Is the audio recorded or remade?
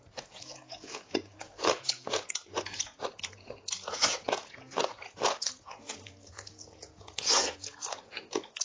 remade